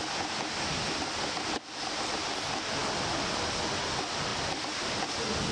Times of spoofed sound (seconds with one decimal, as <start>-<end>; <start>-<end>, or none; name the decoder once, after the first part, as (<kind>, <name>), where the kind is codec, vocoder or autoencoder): none